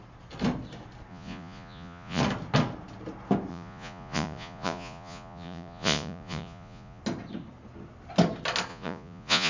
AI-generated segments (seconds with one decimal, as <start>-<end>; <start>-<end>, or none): 1.1-2.2; 3.5-7.0; 8.7-9.5